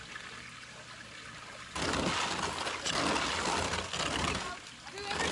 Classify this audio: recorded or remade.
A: recorded